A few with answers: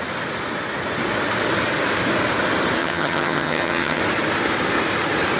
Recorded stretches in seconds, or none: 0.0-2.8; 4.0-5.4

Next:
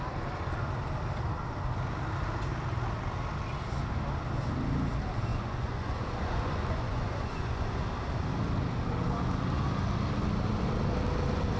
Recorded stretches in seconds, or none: 0.0-5.3; 7.8-11.6

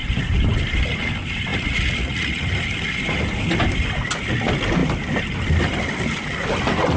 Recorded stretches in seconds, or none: 0.0-1.5; 2.4-7.0

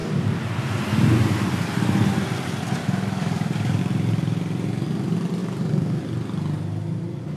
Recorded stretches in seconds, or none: 0.0-2.8; 3.8-5.4; 6.0-7.4

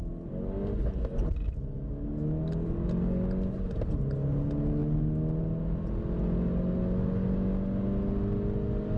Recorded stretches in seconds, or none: 0.0-9.0

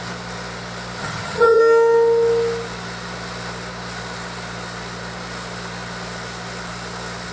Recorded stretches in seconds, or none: 0.0-1.0; 1.6-7.3

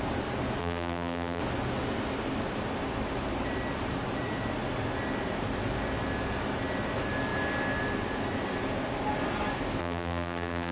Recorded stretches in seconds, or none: 0.0-0.6; 1.4-9.8

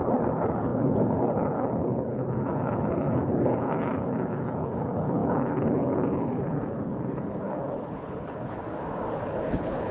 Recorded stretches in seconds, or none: 8.6-9.1